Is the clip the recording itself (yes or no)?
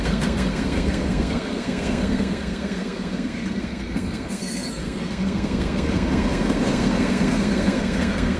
no